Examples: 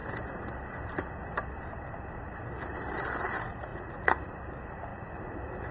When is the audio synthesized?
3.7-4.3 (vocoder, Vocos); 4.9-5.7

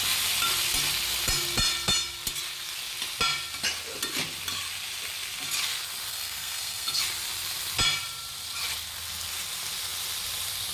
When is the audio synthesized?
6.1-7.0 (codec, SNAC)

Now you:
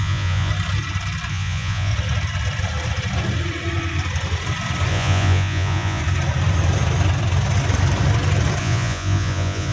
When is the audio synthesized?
0.0-0.5 (vocoder, Vocos); 1.3-1.9; 4.9-6.0; 8.6-9.7